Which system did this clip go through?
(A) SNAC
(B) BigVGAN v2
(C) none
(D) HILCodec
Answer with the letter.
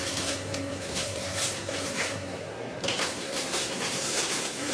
A